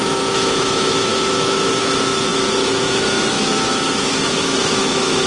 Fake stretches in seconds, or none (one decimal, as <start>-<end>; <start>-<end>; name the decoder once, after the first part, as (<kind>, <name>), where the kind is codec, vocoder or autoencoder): 0.0-5.3 (autoencoder, DAC-VAE)